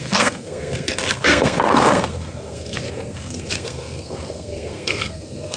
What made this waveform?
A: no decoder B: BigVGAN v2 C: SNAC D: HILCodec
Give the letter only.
C